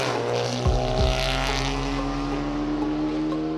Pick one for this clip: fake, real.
real